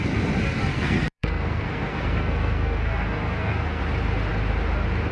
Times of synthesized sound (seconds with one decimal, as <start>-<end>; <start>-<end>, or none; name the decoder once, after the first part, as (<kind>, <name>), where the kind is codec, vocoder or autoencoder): 0.7-3.8 (codec, SNAC)